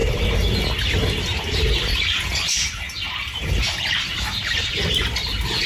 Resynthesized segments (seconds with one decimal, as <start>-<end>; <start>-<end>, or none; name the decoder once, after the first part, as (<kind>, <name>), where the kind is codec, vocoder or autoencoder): 1.3-4.7 (vocoder, BigVGAN v2)